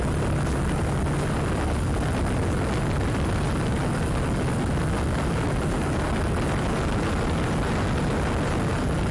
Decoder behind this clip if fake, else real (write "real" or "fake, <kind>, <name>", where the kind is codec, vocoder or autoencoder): real